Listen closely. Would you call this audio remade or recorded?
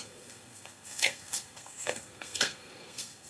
remade